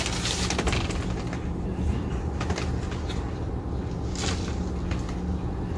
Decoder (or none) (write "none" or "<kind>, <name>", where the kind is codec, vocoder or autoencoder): none